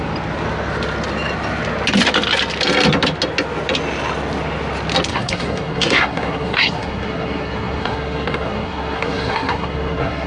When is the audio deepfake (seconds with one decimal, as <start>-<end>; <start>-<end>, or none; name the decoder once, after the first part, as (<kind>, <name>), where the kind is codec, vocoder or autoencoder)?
5.1-10.3 (codec, SNAC)